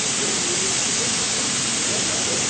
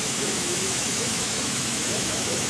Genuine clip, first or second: first